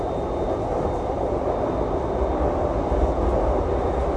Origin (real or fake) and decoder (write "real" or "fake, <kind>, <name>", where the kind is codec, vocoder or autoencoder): real